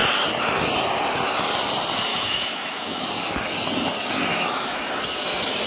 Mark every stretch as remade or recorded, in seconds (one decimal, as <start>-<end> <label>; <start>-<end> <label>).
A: 0.0-2.1 recorded; 2.1-3.0 remade; 3.0-4.3 recorded; 4.3-4.9 remade; 4.9-5.7 recorded

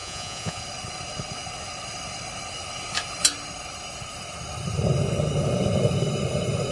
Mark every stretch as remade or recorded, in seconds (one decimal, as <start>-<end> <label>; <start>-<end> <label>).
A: 0.0-0.6 remade; 0.6-6.7 recorded

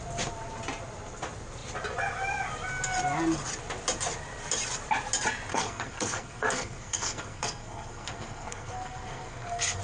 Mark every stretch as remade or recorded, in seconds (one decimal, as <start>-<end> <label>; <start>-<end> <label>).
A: 0.0-5.5 recorded; 5.5-9.8 remade

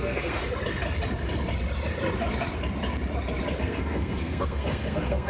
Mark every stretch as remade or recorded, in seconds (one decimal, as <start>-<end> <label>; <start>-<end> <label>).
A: 0.0-0.4 remade; 0.4-3.6 recorded; 3.6-5.3 remade